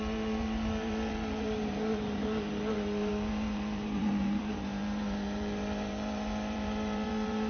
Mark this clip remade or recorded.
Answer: remade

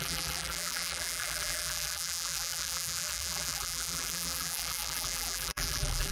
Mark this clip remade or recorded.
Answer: remade